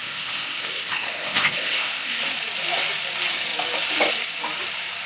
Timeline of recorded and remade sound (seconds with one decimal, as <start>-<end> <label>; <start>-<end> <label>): 0.0-2.2 remade; 2.2-5.1 recorded